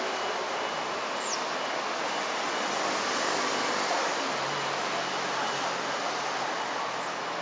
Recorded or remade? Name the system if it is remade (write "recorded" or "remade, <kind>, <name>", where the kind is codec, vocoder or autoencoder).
recorded